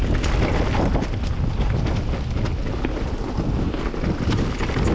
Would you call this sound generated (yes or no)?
no